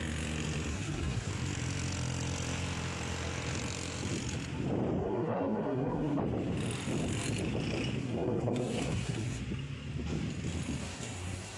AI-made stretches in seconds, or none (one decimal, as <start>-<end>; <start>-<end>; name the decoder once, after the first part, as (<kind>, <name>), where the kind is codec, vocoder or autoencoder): 0.7-1.3 (codec, SNAC); 5.0-6.2; 8.0-9.4; 10.8-11.6